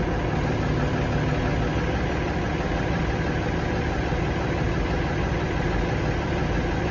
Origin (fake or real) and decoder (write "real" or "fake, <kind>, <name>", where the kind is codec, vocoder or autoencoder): real